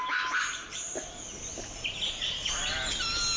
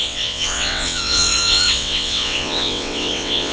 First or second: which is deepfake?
second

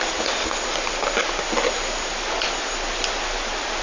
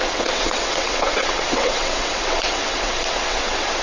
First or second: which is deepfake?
second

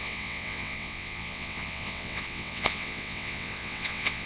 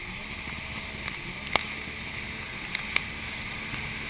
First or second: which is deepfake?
first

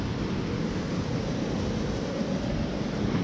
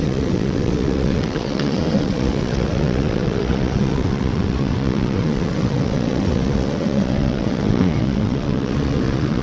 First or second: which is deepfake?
second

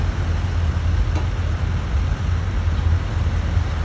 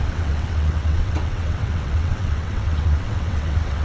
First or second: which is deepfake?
second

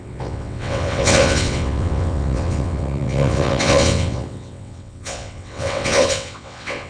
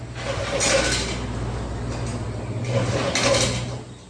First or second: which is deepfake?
first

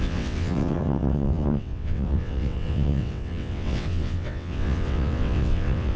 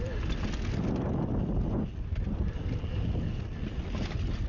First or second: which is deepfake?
first